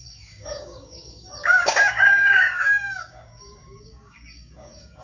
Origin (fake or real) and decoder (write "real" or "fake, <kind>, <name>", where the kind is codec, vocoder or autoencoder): fake, codec, DAC